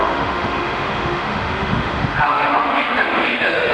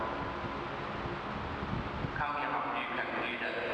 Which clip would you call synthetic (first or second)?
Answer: first